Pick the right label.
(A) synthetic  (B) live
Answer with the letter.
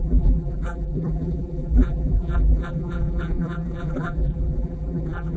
A